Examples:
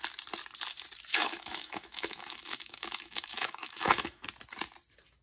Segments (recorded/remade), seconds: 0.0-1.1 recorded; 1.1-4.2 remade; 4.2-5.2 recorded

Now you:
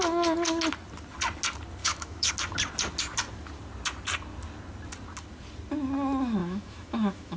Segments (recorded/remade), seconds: 0.0-1.8 recorded; 1.8-2.3 remade; 2.3-6.4 recorded; 6.4-7.4 remade

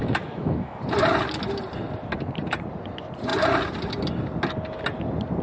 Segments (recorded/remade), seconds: 0.0-0.8 remade; 0.8-5.4 recorded

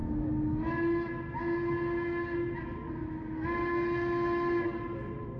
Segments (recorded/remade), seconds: 0.0-5.4 recorded